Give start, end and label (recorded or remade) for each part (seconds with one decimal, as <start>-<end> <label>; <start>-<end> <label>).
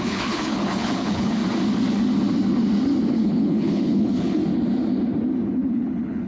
0.0-1.4 remade; 1.4-3.1 recorded; 3.1-4.4 remade; 4.4-5.7 recorded; 5.7-6.3 remade